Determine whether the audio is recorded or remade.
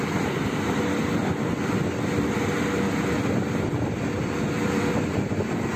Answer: recorded